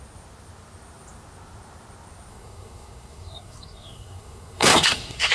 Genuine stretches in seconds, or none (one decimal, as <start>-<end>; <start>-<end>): 0.0-2.3